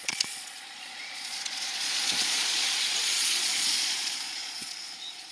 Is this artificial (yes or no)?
yes